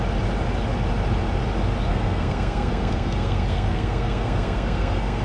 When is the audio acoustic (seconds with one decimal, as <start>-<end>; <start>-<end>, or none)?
0.0-1.9